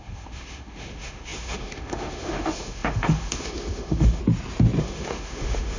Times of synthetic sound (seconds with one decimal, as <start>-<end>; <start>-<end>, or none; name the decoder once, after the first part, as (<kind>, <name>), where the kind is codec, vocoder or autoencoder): 0.0-4.2 (autoencoder, DAC-VAE); 4.8-5.8